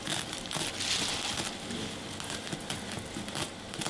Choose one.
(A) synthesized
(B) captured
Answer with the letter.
B